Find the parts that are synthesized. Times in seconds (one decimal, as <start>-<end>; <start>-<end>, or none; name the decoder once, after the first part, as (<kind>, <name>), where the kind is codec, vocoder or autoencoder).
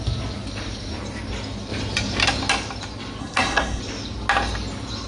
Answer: 3.2-3.8 (codec, SNAC)